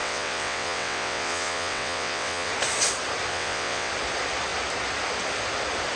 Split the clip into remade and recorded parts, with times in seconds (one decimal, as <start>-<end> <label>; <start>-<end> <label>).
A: 0.0-2.5 remade; 2.5-3.3 recorded; 3.3-3.9 remade; 3.9-6.0 recorded